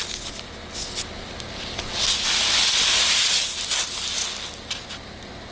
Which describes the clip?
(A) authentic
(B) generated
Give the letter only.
A